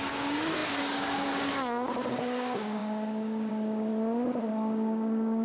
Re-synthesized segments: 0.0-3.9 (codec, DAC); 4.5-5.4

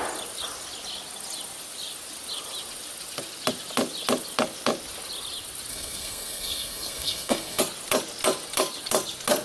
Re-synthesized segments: 5.7-7.6 (codec, SNAC)

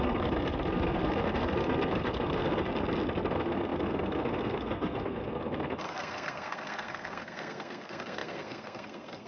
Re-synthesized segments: 0.0-2.7 (codec, SNAC); 3.3-9.3

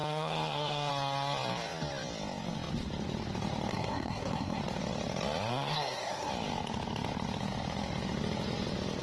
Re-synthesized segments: 0.0-0.9 (codec, SNAC); 3.7-4.6; 5.5-6.3